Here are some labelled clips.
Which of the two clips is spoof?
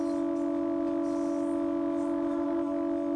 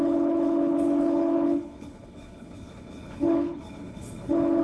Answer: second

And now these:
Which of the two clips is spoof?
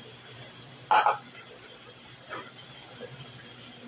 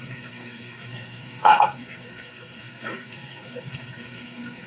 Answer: second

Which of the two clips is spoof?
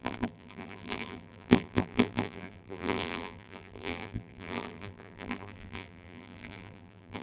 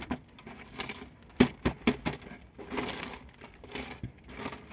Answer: first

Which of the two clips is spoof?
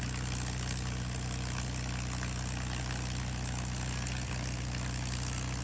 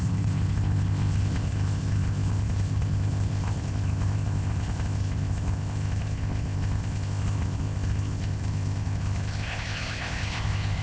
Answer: second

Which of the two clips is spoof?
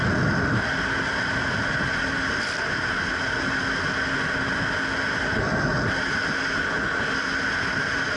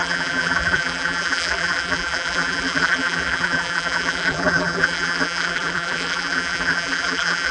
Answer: second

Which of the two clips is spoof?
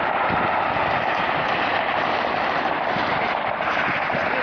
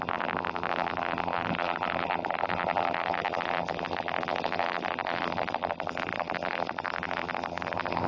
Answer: second